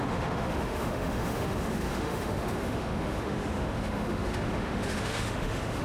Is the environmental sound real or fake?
fake